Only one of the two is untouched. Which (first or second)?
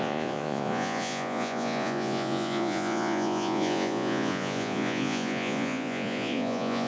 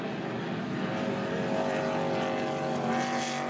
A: second